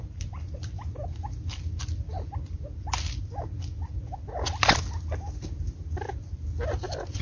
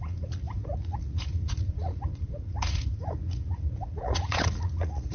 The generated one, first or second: second